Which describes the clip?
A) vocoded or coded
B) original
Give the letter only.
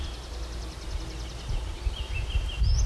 B